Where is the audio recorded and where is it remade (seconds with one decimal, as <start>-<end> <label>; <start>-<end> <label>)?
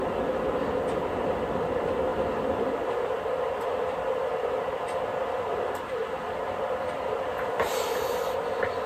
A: 0.0-2.1 recorded; 2.1-3.0 remade; 3.0-8.9 recorded